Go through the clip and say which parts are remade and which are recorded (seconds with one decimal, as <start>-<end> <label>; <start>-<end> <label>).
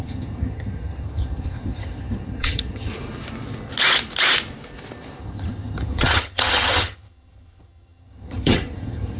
0.0-2.9 remade; 2.9-5.2 recorded; 5.2-9.2 remade